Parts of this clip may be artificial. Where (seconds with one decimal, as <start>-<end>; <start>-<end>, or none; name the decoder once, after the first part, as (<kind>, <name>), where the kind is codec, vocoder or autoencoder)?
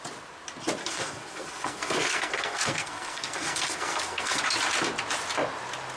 0.8-4.4 (codec, SNAC)